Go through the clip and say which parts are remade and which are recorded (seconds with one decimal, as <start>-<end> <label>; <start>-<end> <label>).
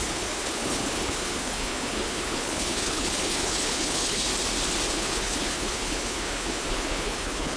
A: 0.0-4.3 remade; 4.3-4.9 recorded; 4.9-7.6 remade